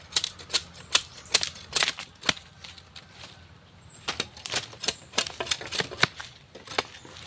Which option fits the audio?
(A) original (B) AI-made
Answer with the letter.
A